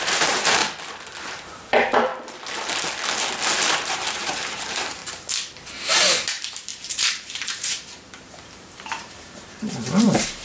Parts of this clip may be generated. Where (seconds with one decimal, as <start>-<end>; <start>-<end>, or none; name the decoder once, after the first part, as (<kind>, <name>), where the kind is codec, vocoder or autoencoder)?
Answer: 0.0-0.6 (vocoder, BigVGAN v2); 1.2-2.1; 3.9-5.0; 5.9-10.4